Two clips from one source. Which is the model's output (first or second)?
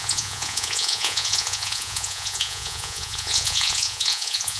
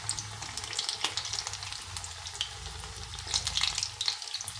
first